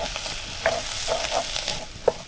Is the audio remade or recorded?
recorded